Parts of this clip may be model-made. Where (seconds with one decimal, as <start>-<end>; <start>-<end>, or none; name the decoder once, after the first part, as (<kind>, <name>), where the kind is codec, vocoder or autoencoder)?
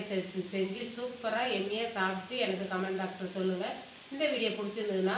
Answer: 0.0-5.2 (vocoder, Vocos)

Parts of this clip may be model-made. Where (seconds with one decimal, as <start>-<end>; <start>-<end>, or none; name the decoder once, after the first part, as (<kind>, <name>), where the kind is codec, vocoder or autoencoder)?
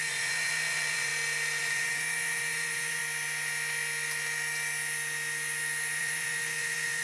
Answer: 0.0-1.1 (vocoder, Vocos); 1.6-3.0; 6.0-7.0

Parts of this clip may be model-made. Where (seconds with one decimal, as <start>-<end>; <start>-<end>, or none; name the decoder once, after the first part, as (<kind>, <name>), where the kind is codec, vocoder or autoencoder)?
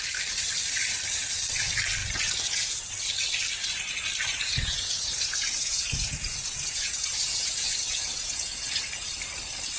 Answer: 2.0-2.8 (vocoder, Vocos); 4.3-8.8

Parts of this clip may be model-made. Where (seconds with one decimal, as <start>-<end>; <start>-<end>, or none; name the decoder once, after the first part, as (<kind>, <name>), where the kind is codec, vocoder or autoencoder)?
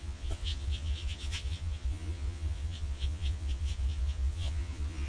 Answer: 0.0-5.1 (vocoder, Vocos)